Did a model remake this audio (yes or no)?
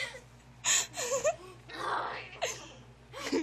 no